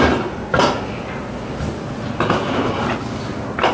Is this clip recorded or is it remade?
recorded